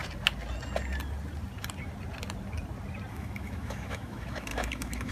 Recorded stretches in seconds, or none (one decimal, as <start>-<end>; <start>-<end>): 0.0-3.1